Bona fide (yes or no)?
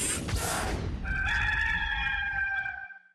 yes